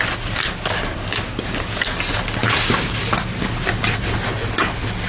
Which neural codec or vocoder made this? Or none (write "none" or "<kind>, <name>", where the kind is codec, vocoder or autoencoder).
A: none